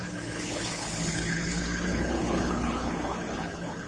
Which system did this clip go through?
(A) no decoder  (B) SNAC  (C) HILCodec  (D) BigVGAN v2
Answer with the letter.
C